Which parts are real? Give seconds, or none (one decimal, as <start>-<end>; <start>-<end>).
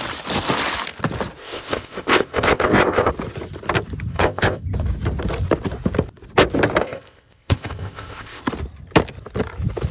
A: 0.0-1.4; 3.1-4.1; 4.6-6.8; 8.4-9.9